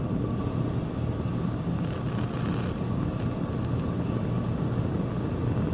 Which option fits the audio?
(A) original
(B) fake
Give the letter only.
A